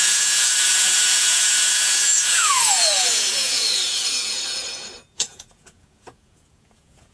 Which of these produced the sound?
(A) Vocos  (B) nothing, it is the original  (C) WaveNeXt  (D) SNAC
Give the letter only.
A